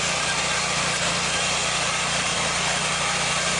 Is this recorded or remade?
recorded